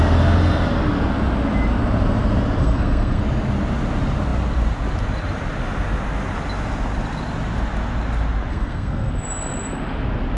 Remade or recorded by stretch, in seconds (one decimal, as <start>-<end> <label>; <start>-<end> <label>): 0.0-2.6 recorded; 2.6-3.2 remade; 3.2-8.5 recorded; 8.5-9.1 remade; 9.1-10.4 recorded